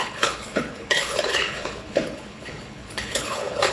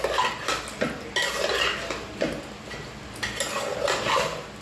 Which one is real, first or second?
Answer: second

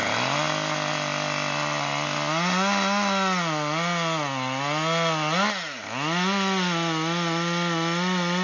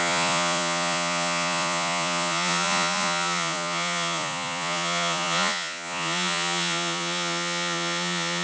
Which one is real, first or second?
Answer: first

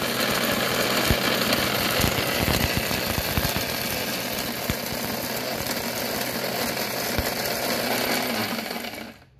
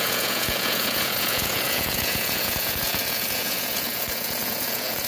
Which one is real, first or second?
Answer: first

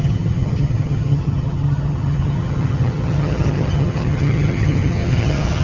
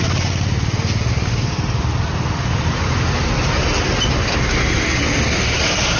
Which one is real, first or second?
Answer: second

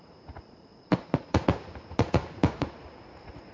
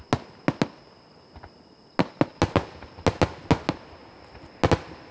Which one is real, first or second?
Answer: second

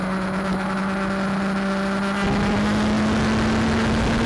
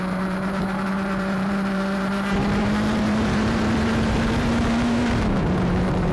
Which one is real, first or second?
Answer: first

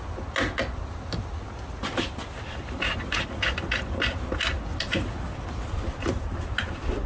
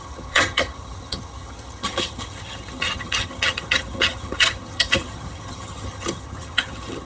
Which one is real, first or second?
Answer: first